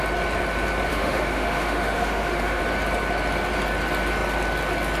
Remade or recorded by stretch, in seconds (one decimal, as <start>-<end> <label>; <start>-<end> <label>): 0.0-0.9 recorded; 0.9-2.6 remade; 2.6-5.0 recorded